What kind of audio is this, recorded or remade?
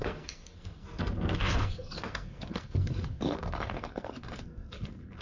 remade